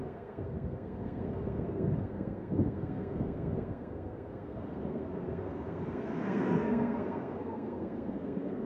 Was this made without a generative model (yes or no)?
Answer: no